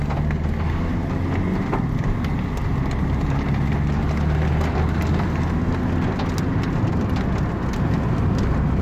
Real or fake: real